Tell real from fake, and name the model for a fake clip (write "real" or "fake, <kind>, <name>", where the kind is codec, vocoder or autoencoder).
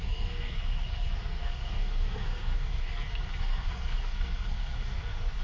fake, codec, SNAC